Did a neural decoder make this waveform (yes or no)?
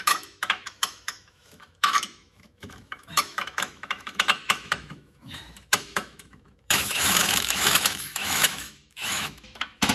yes